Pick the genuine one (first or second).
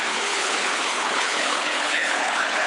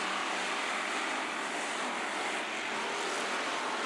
second